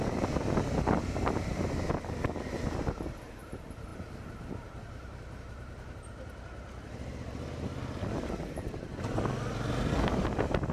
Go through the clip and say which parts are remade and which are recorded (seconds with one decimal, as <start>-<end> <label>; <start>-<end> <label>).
0.0-10.7 recorded

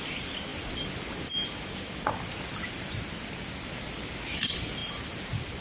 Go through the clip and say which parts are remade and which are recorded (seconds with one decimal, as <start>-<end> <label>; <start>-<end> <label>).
0.0-5.6 recorded

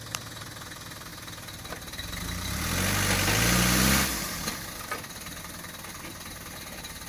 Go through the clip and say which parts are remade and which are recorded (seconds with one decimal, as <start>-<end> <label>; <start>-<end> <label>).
0.0-7.1 recorded